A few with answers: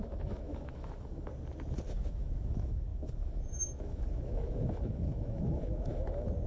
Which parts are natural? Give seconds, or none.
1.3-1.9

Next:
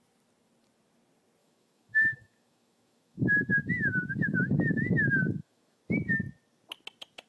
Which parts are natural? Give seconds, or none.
0.0-1.4; 5.8-7.3

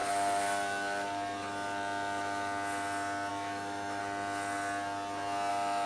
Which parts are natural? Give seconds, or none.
0.0-3.3; 4.0-5.5